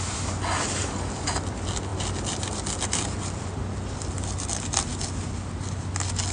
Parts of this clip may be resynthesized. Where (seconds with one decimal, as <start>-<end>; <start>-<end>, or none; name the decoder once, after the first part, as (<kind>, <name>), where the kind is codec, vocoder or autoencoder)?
none